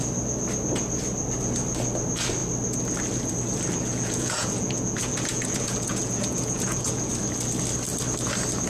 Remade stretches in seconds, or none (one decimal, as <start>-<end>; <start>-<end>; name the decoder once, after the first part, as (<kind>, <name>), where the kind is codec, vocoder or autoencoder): 3.8-7.1 (vocoder, Vocos)